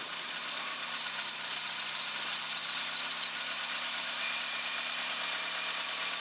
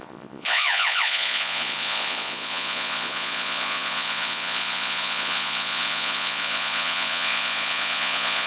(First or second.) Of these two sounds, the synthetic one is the second